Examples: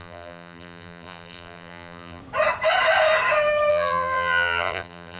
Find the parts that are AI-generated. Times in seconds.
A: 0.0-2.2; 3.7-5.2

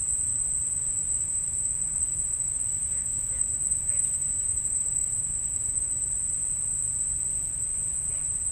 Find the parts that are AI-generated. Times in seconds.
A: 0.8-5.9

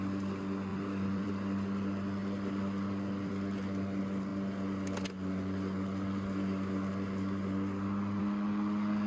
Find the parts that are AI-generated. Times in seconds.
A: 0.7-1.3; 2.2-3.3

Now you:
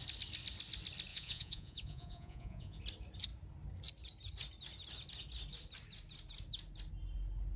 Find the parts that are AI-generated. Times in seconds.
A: 1.1-2.8

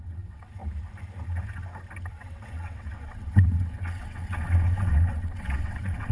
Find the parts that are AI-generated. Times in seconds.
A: 0.0-0.6; 2.1-6.1

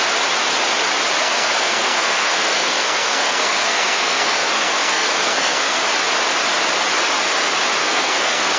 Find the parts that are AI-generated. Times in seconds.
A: 1.2-5.8; 7.8-8.6

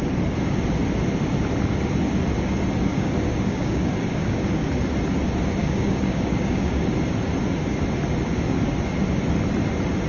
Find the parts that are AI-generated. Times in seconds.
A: 2.9-4.7; 5.6-6.9

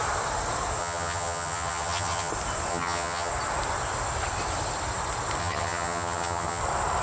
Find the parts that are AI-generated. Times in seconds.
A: 0.8-2.3; 2.7-3.3; 5.4-6.6